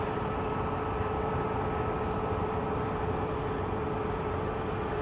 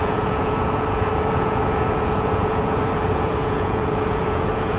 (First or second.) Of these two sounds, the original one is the first